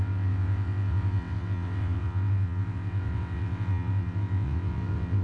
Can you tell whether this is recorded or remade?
remade